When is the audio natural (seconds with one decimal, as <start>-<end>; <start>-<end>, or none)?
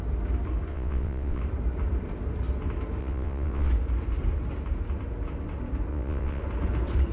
0.0-0.7; 1.4-3.0; 3.7-5.9; 6.4-7.1